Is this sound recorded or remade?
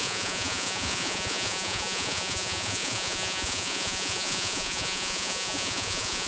remade